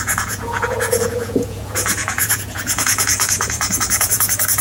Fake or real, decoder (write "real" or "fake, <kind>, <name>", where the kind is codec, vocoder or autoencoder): fake, vocoder, Vocos